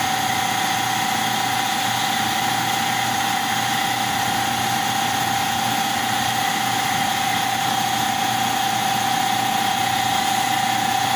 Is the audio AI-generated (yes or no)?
no